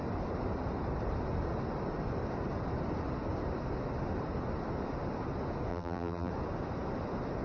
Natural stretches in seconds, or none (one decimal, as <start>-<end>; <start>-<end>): 0.0-5.7; 6.3-7.4